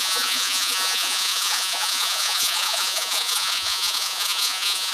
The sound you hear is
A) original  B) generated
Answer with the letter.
B